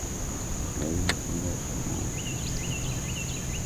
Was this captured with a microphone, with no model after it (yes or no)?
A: yes